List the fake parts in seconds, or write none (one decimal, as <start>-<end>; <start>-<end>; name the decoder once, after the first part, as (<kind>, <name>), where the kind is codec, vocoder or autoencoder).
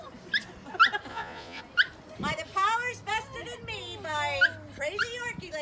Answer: 1.1-1.6 (vocoder, Vocos)